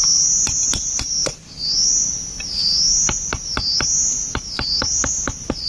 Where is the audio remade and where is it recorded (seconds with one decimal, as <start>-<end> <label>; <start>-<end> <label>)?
0.0-5.7 recorded